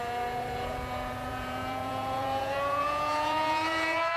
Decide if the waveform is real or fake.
fake